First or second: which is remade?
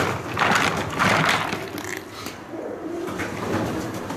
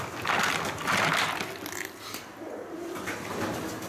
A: first